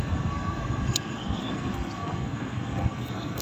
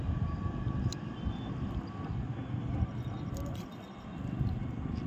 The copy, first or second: first